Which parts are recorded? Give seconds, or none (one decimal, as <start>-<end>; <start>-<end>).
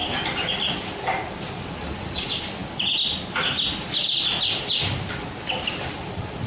2.6-4.0